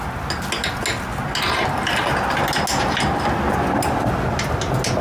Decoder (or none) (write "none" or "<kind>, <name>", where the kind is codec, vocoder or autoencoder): none